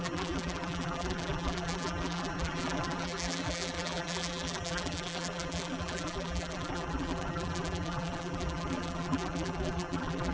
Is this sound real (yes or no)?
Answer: no